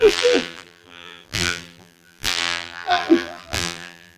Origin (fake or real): fake